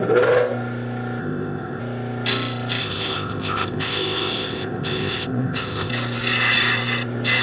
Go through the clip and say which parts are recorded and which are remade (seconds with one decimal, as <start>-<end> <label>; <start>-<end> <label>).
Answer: 0.0-1.2 recorded; 1.2-1.8 remade; 1.8-2.8 recorded; 2.8-5.9 remade; 5.9-7.4 recorded